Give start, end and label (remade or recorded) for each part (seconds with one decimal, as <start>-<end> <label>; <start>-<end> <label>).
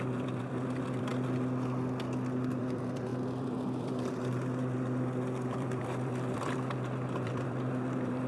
0.0-1.1 remade; 1.1-2.6 recorded; 2.6-8.3 remade